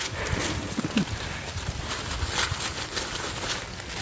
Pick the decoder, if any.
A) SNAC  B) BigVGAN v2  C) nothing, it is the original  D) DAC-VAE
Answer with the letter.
C